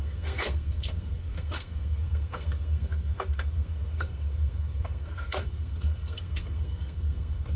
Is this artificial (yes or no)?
yes